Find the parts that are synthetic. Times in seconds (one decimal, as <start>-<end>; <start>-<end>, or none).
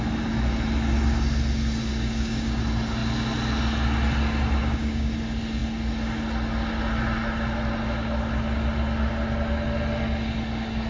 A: 1.9-2.6; 4.6-5.1